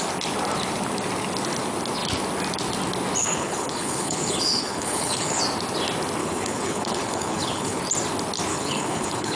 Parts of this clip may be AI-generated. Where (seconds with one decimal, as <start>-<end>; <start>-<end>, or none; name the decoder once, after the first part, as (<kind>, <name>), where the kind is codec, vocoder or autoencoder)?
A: 3.2-5.4 (codec, HILCodec); 6.2-7.8; 8.5-9.4